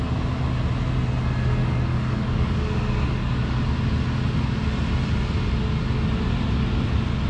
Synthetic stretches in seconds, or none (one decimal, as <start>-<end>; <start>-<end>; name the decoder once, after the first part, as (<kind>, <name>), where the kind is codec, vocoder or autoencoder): 1.6-3.6 (codec, DAC)